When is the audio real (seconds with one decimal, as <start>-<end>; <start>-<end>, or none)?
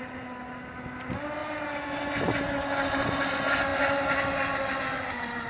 0.0-5.5